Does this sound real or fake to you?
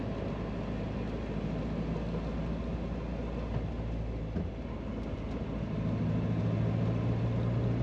real